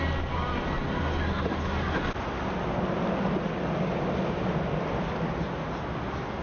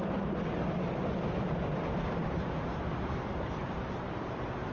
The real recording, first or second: first